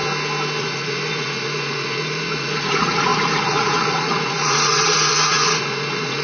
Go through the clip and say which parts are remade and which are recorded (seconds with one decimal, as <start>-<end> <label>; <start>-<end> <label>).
0.0-0.6 recorded; 0.6-6.2 remade